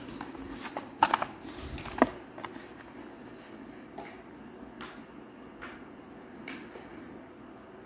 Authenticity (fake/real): real